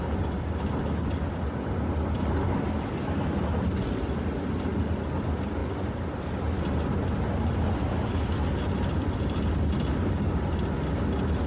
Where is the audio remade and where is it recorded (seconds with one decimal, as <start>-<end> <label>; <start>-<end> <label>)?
0.0-11.5 recorded